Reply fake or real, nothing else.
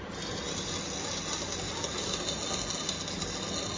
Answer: real